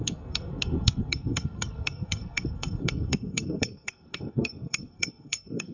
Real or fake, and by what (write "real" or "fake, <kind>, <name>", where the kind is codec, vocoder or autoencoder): fake, codec, SNAC